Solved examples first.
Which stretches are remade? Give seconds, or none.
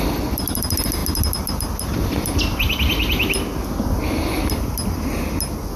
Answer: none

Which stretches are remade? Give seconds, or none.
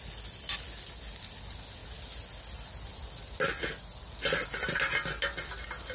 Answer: none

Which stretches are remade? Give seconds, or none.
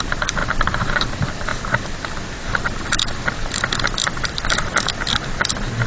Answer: 0.4-1.1 (vocoder, BigVGAN v2)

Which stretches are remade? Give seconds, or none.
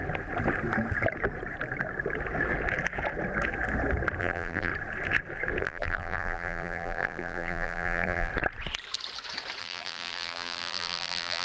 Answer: 4.2-4.7 (vocoder, BigVGAN v2); 5.6-8.3; 9.6-11.4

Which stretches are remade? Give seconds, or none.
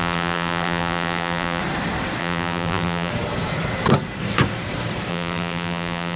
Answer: 0.0-1.6 (vocoder, BigVGAN v2); 2.2-3.1; 5.1-6.2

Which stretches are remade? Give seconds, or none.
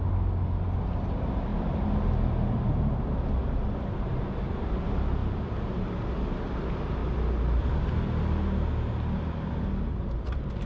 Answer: 5.2-5.9 (vocoder, BigVGAN v2); 7.0-7.6